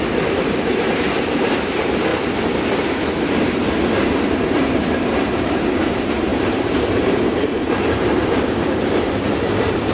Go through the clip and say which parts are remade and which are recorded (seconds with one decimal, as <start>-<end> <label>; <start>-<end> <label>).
0.0-2.1 remade; 2.1-4.4 recorded; 4.4-9.9 remade